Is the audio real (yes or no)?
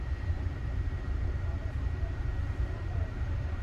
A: no